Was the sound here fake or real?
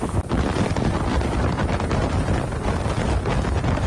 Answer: real